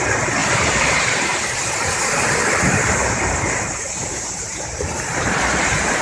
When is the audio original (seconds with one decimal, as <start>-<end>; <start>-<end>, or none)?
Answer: 0.0-0.4; 1.7-2.1